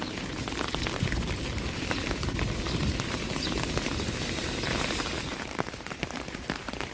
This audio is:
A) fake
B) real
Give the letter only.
A